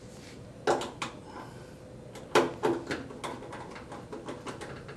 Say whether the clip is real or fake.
real